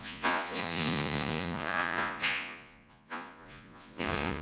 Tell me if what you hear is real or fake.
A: fake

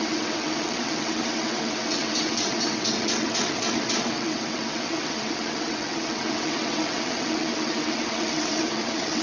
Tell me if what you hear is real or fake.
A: fake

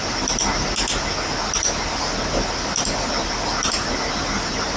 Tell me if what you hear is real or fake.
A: real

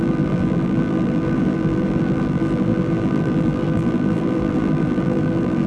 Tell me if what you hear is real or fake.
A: fake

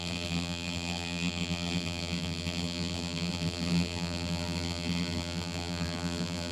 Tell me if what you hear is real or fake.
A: fake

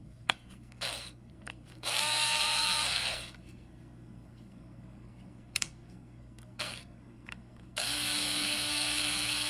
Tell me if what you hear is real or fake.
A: fake